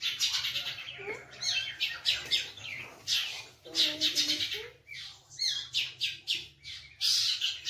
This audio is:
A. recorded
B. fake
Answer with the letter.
A